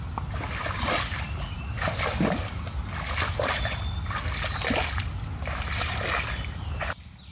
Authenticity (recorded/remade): recorded